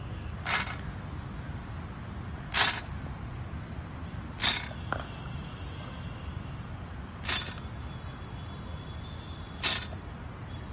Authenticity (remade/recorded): recorded